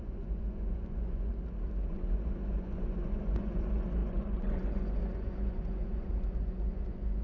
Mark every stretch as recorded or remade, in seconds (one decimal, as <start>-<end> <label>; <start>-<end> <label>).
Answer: 0.0-1.3 remade; 1.3-1.9 recorded; 1.9-7.2 remade